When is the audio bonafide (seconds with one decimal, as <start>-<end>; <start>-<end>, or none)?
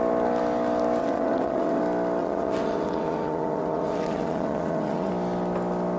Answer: 0.0-1.0; 1.8-2.2; 5.1-6.0